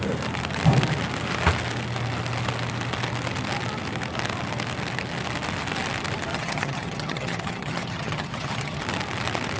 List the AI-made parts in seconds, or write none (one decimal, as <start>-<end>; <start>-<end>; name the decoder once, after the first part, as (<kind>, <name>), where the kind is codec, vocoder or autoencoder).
6.3-8.8 (vocoder, HiFi-GAN)